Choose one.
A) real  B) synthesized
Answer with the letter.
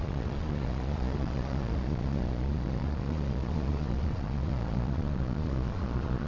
B